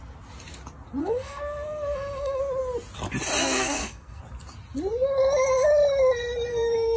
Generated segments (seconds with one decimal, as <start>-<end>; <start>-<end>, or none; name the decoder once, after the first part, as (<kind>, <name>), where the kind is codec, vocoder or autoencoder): 1.0-2.4 (codec, SNAC); 3.4-4.2; 6.5-7.0